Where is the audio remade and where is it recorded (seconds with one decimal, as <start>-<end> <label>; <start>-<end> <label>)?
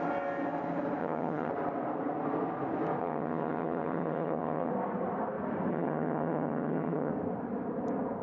0.0-1.0 recorded; 1.0-1.5 remade; 1.5-3.0 recorded; 3.0-4.7 remade; 4.7-5.7 recorded; 5.7-7.1 remade; 7.1-8.2 recorded